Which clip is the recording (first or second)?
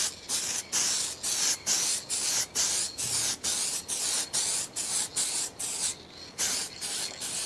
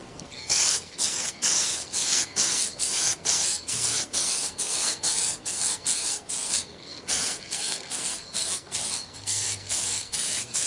first